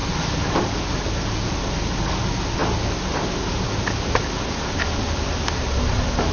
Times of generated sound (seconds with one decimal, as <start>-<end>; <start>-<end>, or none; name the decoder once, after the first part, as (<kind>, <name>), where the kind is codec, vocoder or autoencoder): none